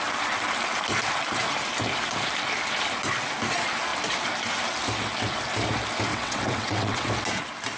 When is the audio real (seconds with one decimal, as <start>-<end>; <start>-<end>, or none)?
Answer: 0.0-6.1; 7.1-7.8